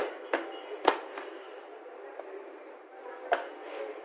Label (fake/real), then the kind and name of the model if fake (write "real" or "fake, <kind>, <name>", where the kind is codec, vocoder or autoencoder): real